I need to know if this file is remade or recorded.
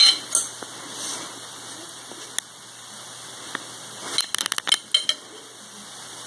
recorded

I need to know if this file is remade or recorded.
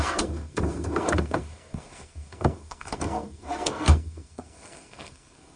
remade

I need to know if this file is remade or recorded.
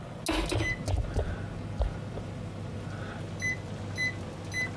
recorded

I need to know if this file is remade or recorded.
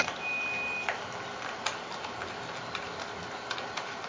recorded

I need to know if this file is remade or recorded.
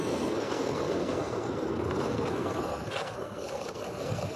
remade